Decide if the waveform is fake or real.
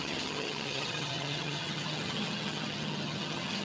fake